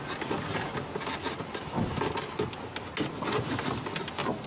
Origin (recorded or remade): recorded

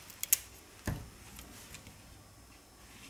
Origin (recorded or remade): recorded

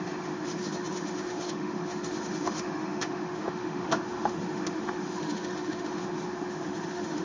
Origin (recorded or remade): remade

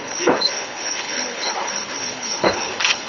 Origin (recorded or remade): remade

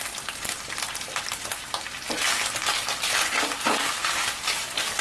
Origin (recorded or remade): recorded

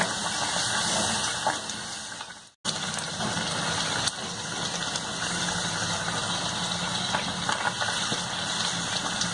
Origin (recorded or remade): recorded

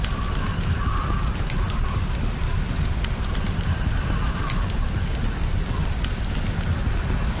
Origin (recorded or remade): recorded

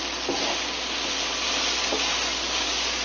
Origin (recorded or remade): recorded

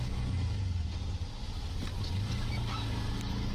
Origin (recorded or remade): recorded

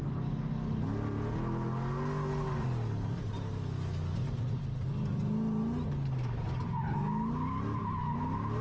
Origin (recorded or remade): recorded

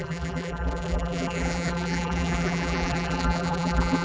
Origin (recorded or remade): remade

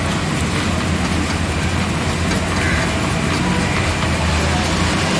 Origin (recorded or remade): recorded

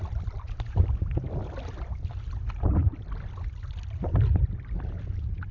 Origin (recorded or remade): recorded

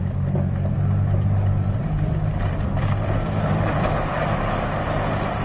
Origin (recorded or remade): remade